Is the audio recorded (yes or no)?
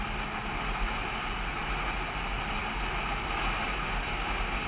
yes